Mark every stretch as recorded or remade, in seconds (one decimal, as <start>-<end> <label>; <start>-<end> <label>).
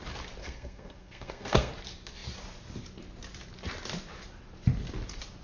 0.0-0.4 recorded; 0.4-1.7 remade; 1.7-5.4 recorded